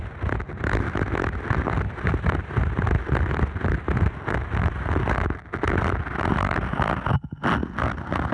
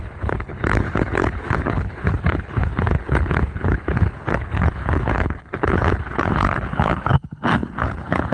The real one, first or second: first